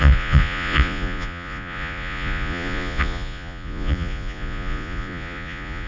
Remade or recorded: remade